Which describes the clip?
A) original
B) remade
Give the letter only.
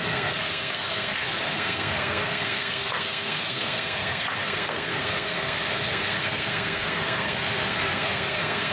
B